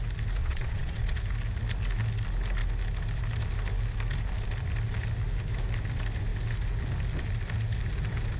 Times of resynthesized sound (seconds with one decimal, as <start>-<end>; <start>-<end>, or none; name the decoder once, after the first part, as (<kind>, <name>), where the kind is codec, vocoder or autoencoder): 0.4-1.2 (vocoder, Vocos)